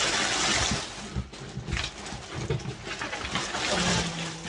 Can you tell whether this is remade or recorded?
recorded